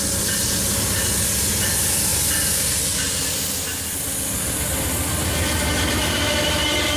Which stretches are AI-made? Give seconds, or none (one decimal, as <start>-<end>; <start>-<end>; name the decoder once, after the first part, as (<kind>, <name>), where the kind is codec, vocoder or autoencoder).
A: none